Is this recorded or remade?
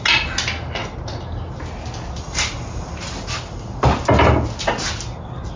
recorded